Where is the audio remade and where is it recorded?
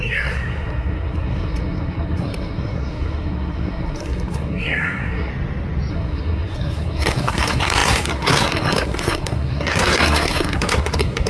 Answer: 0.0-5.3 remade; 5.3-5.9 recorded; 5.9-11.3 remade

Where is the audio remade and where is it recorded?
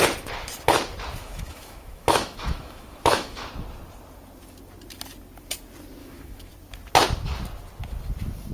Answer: 0.0-1.2 recorded; 1.2-3.5 remade; 3.5-6.0 recorded; 6.0-6.5 remade; 6.5-8.5 recorded